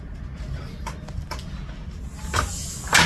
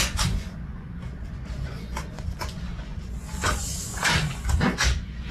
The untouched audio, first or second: first